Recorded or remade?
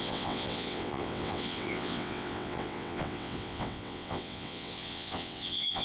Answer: remade